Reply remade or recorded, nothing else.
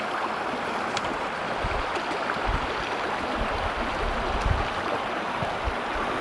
recorded